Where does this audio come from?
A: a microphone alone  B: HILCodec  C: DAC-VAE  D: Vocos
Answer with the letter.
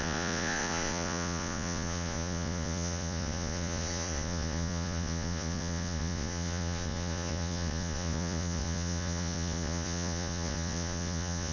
D